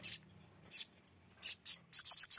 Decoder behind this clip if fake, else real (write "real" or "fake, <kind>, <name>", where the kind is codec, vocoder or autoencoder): real